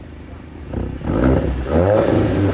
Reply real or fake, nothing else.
fake